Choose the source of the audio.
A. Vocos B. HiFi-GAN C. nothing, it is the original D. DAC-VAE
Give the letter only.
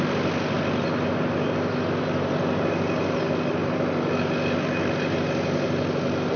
C